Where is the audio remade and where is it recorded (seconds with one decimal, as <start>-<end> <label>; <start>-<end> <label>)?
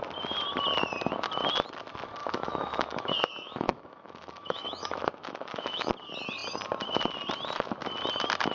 0.0-2.2 recorded; 2.2-5.9 remade; 5.9-8.5 recorded